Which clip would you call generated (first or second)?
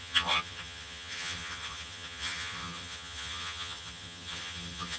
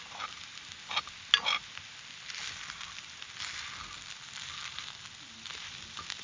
first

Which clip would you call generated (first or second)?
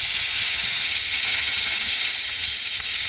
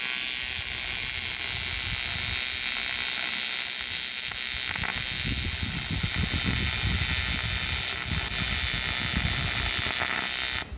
first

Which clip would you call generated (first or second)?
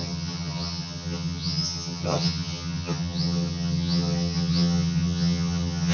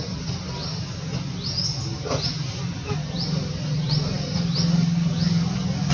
first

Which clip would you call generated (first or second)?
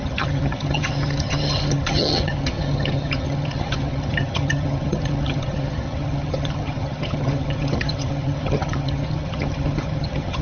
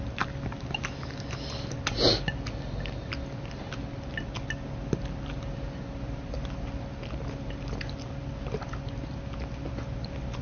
first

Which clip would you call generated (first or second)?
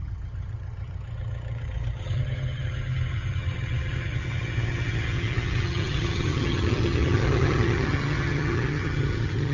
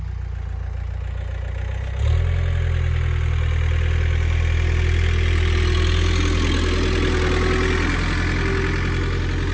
first